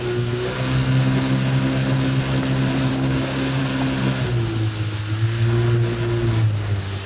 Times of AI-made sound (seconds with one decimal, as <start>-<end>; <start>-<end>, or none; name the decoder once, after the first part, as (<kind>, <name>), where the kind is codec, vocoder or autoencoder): 2.9-3.6 (codec, DAC)